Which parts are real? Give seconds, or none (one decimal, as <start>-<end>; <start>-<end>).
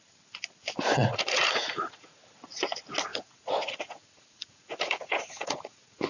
0.0-1.0; 2.2-3.1